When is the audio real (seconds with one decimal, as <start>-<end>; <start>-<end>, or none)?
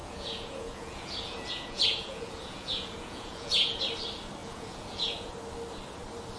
3.8-4.4; 5.3-6.4